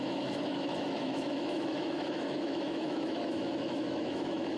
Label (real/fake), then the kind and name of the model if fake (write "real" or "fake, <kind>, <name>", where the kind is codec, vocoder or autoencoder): fake, autoencoder, DAC-VAE